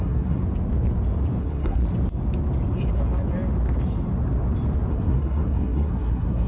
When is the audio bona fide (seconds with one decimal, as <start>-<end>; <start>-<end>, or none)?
0.4-1.4; 1.8-4.9